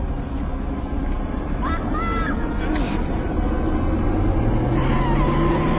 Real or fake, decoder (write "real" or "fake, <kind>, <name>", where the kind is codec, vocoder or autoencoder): real